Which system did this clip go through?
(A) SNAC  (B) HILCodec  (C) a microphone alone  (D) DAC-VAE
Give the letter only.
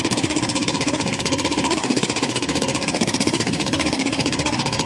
A